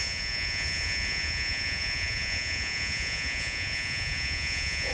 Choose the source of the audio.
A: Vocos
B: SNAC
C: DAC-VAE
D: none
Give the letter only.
A